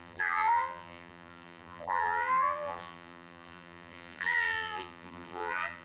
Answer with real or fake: fake